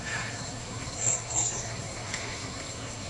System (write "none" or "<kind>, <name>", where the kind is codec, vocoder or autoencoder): codec, SNAC